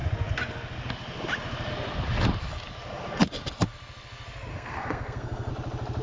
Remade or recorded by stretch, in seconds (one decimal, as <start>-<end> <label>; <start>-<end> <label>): 0.0-4.5 recorded; 4.5-5.5 remade; 5.5-6.0 recorded